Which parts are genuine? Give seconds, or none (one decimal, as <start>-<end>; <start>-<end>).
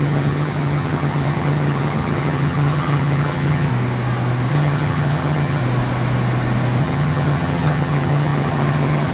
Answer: 3.7-4.5; 5.6-6.8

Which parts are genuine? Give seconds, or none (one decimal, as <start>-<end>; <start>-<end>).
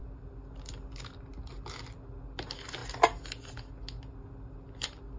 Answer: 0.0-5.2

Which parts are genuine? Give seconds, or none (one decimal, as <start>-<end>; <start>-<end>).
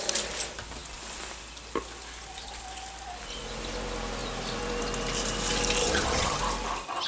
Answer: 0.0-5.8; 6.4-7.1